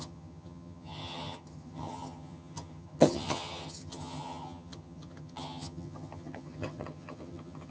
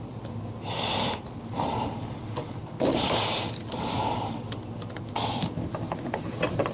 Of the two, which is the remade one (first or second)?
first